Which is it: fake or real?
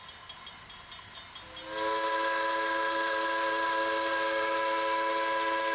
real